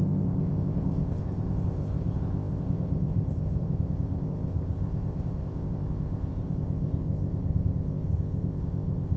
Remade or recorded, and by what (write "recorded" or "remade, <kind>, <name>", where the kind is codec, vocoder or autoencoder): remade, codec, ZipCodec